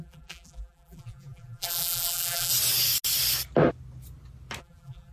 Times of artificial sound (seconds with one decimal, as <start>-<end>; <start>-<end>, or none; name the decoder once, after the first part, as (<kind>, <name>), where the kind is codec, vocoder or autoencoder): 0.0-2.5 (vocoder, BigVGAN v2); 4.6-5.1